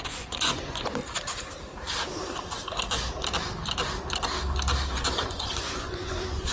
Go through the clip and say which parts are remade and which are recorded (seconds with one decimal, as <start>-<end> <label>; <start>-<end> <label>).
0.0-1.0 remade; 1.0-4.9 recorded; 4.9-6.5 remade